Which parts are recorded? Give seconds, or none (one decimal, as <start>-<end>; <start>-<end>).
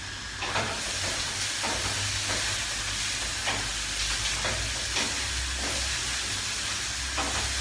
1.6-7.6